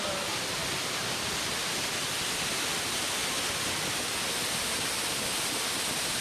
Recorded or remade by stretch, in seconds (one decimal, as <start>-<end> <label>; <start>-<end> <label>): 0.0-6.2 recorded